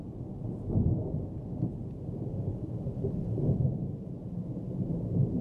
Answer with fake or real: real